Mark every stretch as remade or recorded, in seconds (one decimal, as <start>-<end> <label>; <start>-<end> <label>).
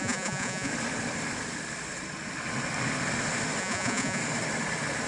0.0-0.7 remade; 0.7-3.6 recorded; 3.6-4.2 remade; 4.2-5.1 recorded